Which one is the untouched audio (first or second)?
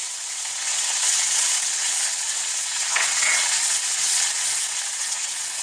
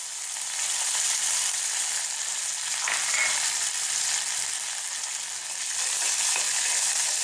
second